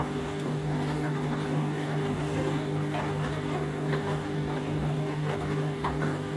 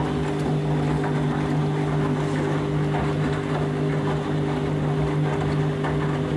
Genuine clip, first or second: second